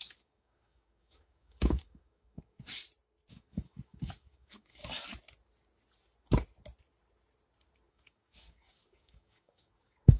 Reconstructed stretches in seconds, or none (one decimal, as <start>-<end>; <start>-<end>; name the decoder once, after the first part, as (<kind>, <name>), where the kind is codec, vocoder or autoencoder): 0.0-2.8 (codec, DAC); 3.3-4.8; 7.9-10.2